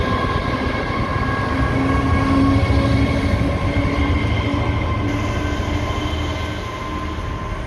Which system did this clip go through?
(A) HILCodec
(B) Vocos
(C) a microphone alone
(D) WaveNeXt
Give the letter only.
C